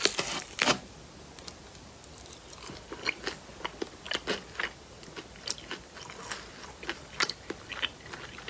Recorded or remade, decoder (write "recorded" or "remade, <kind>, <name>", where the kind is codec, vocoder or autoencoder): recorded